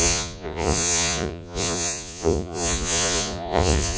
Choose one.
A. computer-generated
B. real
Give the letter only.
A